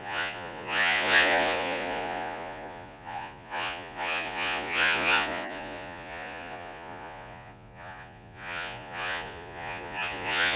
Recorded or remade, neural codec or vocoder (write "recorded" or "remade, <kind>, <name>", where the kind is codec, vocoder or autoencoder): remade, vocoder, Vocos